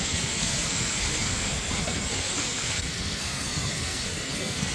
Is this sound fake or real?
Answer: fake